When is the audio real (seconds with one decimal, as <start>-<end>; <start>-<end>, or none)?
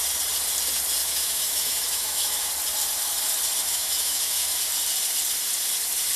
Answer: 0.0-1.0; 2.5-3.6; 4.6-6.2